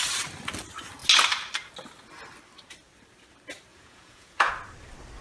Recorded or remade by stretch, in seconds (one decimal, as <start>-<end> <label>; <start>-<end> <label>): 0.0-3.7 recorded; 3.7-4.5 remade; 4.5-5.2 recorded